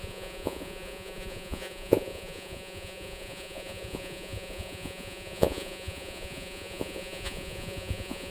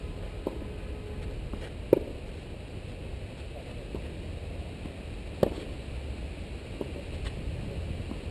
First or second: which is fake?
first